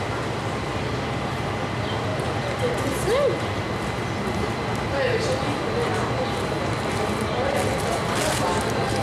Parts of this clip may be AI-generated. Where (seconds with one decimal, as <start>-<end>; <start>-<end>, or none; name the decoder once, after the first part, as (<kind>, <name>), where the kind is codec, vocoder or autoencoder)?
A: none